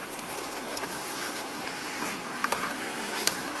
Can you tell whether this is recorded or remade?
remade